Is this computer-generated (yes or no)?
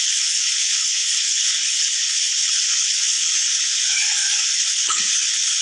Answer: yes